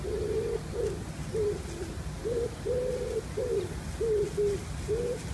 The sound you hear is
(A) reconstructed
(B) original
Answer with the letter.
B